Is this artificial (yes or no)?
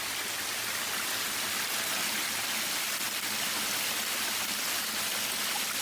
no